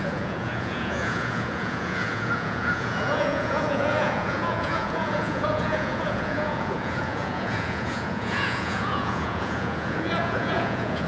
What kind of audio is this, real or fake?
fake